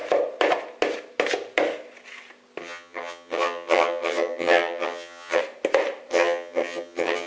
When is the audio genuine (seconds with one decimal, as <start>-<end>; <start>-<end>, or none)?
0.0-2.6; 5.4-6.1